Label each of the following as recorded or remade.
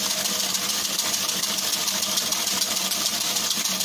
recorded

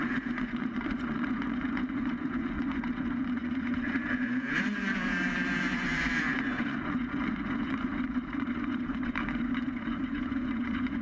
remade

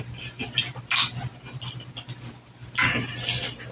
recorded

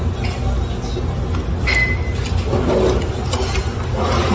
recorded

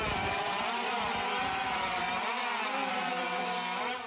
remade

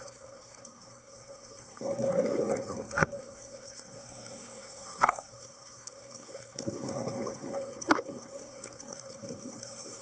remade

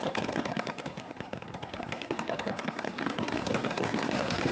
remade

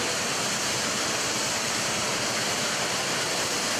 remade